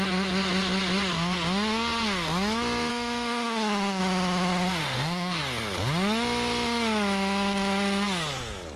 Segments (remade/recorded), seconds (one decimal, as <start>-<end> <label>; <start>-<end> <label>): 0.0-2.9 recorded; 2.9-4.0 remade; 4.0-4.8 recorded; 4.8-5.4 remade; 5.4-8.8 recorded